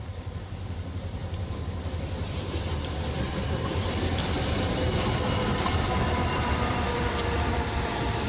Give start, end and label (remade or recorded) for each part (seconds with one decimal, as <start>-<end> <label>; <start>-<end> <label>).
0.0-1.2 remade; 1.2-2.8 recorded; 2.8-4.9 remade; 4.9-6.3 recorded; 6.3-8.3 remade